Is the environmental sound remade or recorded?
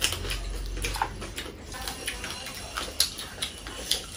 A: recorded